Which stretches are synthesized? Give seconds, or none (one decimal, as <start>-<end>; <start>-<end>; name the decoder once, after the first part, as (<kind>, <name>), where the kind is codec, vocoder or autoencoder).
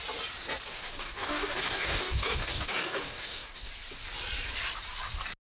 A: 0.7-3.7 (codec, DAC)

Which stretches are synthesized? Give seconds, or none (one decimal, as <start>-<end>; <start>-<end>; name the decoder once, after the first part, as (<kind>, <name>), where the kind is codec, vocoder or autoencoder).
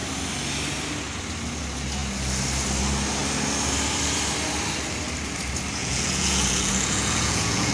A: 5.8-7.7 (vocoder, Vocos)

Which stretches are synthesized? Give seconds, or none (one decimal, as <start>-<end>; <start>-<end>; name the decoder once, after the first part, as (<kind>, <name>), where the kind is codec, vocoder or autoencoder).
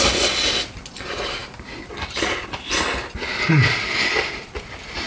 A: none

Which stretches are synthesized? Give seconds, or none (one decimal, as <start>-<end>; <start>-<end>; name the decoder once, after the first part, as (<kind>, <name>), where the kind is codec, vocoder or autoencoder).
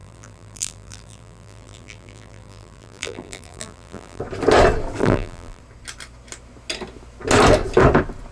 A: 0.0-4.2 (vocoder, BigVGAN v2); 5.0-5.6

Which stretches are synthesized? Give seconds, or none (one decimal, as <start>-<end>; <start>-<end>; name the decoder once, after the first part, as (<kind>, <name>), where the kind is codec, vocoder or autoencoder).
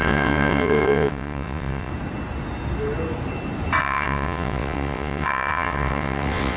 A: 0.0-1.9 (vocoder, WaveNeXt); 3.8-6.6